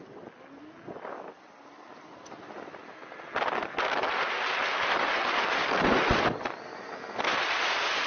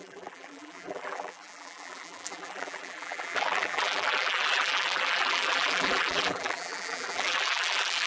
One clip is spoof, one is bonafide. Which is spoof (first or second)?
second